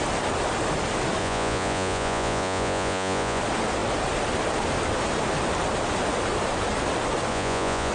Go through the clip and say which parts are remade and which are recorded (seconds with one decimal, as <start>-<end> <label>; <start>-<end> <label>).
0.0-1.2 recorded; 1.2-3.4 remade; 3.4-7.3 recorded; 7.3-7.9 remade